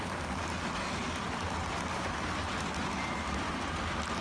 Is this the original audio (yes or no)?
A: yes